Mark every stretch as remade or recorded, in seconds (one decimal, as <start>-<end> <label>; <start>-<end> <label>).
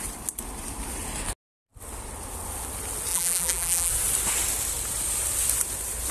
0.0-3.1 recorded; 3.1-3.9 remade; 3.9-6.1 recorded